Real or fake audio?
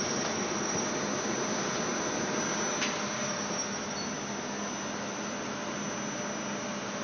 real